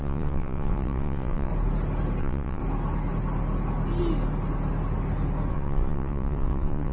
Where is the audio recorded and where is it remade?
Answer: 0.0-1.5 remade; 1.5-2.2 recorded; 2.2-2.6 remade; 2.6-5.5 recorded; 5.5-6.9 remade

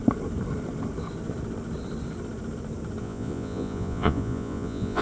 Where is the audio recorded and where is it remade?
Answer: 0.0-3.0 recorded; 3.0-5.0 remade

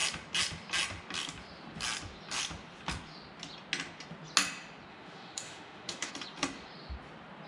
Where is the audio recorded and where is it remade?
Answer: 0.0-4.9 recorded; 4.9-6.1 remade; 6.1-7.5 recorded

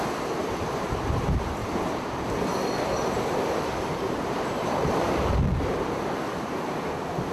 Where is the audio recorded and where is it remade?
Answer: 0.0-0.4 recorded; 0.4-0.9 remade; 0.9-1.6 recorded; 1.6-6.0 remade; 6.0-7.3 recorded

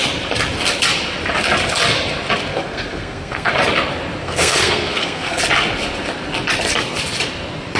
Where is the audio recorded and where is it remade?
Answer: 0.0-2.5 recorded; 2.5-3.5 remade; 3.5-4.2 recorded; 4.2-5.4 remade; 5.4-7.8 recorded

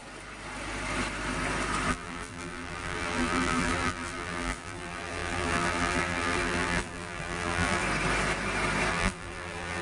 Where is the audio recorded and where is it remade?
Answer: 0.0-1.9 recorded; 1.9-7.8 remade; 7.8-8.9 recorded; 8.9-9.8 remade